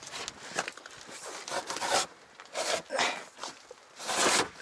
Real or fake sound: real